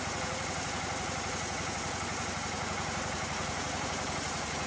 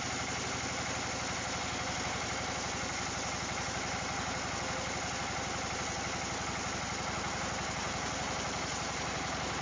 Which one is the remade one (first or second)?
first